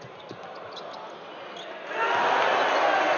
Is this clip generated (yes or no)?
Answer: no